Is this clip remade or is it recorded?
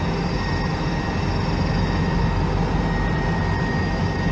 recorded